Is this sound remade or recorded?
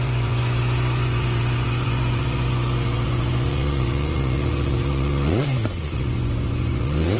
remade